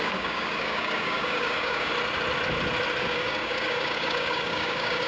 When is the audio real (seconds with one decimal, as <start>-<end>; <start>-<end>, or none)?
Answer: 1.9-3.0